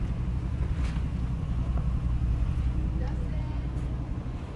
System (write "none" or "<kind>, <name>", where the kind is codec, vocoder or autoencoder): vocoder, Vocos